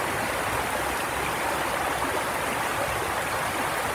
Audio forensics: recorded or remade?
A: recorded